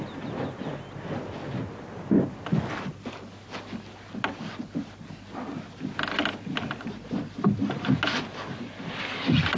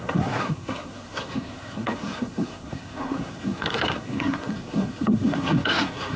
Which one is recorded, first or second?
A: first